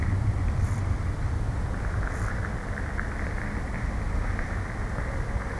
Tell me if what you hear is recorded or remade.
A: recorded